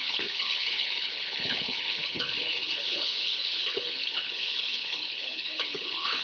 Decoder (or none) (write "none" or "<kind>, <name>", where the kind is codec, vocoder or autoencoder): codec, HILCodec